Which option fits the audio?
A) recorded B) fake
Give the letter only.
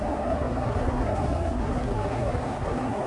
B